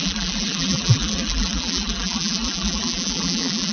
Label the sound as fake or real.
fake